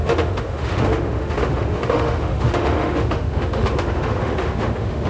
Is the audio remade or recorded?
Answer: remade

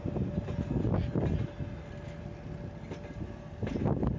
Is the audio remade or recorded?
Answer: recorded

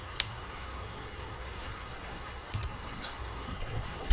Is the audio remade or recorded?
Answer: remade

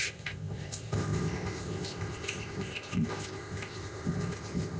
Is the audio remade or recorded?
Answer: remade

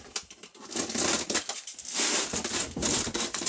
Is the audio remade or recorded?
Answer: recorded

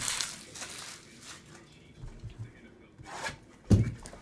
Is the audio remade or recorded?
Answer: recorded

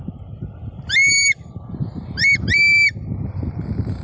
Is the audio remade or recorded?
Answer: remade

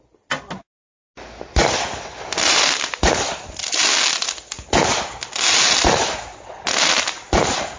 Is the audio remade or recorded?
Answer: recorded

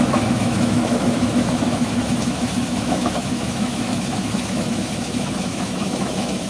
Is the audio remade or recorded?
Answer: remade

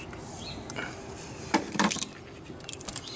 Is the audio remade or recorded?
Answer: recorded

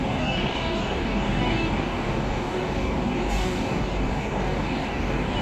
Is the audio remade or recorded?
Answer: remade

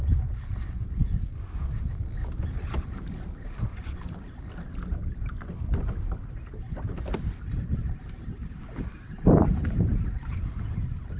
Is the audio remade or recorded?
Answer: recorded